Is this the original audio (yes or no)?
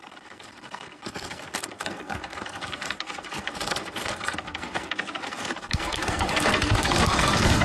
no